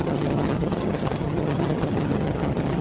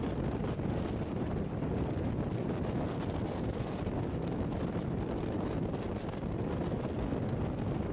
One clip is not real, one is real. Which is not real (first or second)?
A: first